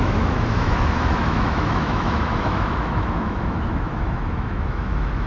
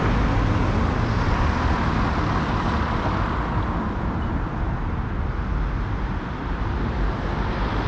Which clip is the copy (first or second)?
first